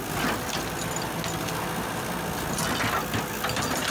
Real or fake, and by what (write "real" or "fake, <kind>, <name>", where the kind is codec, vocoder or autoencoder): real